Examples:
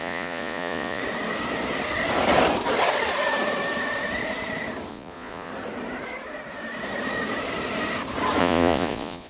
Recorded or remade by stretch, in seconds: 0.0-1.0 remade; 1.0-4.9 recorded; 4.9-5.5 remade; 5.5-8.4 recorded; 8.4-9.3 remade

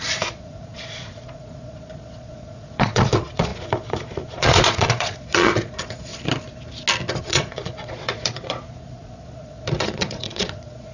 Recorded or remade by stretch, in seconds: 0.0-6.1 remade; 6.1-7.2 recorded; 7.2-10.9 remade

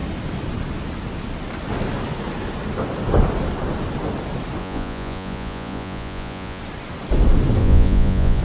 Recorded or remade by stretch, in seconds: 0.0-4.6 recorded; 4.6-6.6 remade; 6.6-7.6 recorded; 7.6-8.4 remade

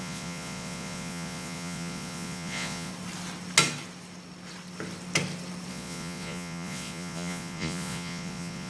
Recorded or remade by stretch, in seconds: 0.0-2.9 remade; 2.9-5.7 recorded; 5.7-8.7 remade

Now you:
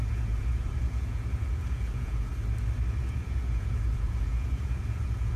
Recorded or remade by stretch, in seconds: 0.0-2.3 remade; 2.3-2.9 recorded; 2.9-5.4 remade

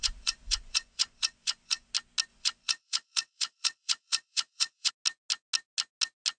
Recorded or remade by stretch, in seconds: 0.0-1.9 remade; 1.9-2.3 recorded; 2.3-4.9 remade; 4.9-6.4 recorded

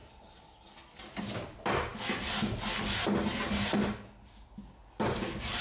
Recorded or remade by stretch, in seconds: 0.0-5.6 recorded